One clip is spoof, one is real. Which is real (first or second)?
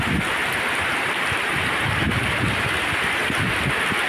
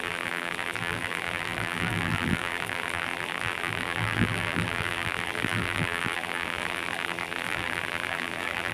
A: first